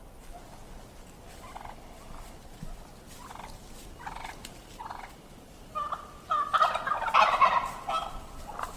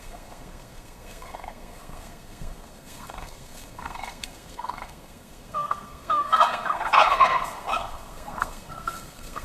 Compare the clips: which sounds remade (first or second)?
second